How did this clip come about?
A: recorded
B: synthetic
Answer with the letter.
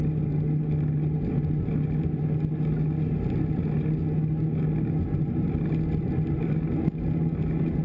A